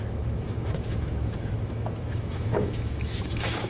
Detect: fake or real fake